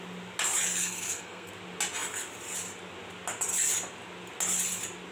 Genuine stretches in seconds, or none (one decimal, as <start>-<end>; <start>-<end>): 0.0-0.8; 1.5-5.1